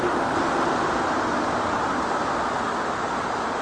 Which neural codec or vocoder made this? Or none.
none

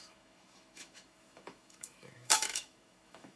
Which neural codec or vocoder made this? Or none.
autoencoder, DAC-VAE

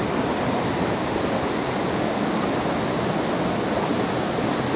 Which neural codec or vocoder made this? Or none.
none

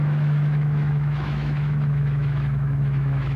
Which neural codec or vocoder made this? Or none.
autoencoder, DAC-VAE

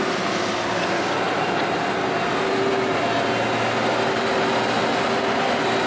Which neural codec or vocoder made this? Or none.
none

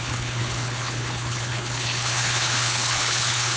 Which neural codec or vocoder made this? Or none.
codec, HILCodec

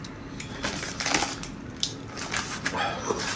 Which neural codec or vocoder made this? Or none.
none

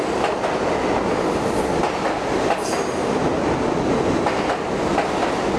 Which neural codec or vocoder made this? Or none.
none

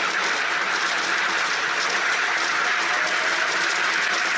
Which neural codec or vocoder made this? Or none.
none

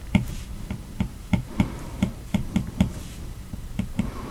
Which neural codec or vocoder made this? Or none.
vocoder, BigVGAN v2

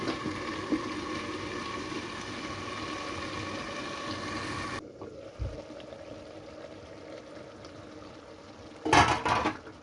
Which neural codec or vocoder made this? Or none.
none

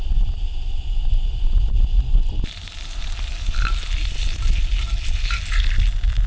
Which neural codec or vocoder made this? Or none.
none